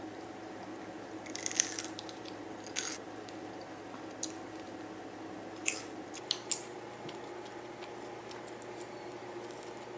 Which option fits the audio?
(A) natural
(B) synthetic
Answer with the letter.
A